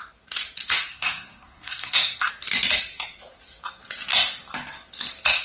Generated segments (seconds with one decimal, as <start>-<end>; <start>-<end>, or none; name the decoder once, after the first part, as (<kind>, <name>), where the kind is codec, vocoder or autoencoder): 0.9-2.3 (codec, SNAC)